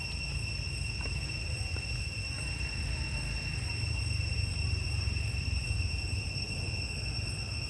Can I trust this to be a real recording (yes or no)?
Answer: yes